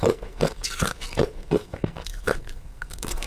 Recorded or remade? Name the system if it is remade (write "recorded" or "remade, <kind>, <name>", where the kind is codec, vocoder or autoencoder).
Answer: remade, codec, SNAC